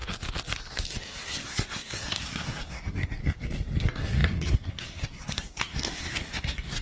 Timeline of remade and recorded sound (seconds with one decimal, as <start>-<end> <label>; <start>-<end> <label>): 0.0-1.0 recorded; 1.0-3.2 remade; 3.2-3.8 recorded; 3.8-6.8 remade